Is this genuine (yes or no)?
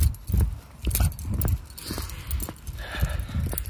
yes